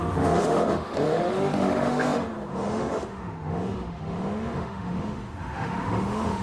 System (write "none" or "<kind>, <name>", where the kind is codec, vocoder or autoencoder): autoencoder, DAC-VAE